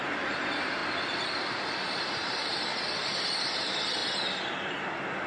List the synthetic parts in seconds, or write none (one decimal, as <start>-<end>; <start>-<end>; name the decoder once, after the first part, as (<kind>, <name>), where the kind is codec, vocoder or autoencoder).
0.0-0.8 (vocoder, BigVGAN v2); 1.9-2.7; 3.2-4.0; 4.5-5.3